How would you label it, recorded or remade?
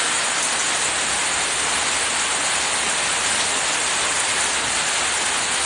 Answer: recorded